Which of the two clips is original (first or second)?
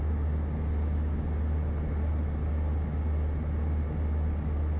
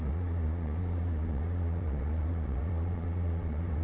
first